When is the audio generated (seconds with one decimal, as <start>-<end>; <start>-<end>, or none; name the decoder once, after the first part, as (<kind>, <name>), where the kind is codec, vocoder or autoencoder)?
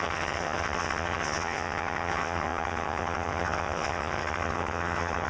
0.0-5.3 (vocoder, HiFi-GAN)